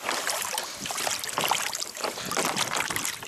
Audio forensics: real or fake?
real